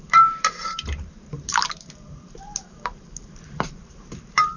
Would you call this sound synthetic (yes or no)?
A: yes